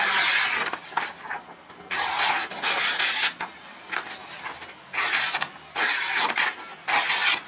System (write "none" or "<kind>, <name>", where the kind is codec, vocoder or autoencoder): none